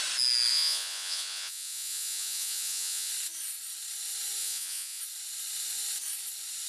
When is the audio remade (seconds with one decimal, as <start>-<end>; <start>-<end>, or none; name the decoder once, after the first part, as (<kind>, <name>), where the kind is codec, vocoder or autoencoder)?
0.5-3.1 (vocoder, Vocos); 4.4-5.0